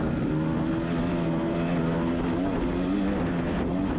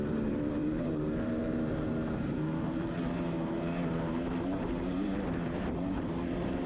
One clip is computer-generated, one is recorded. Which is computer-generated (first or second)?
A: second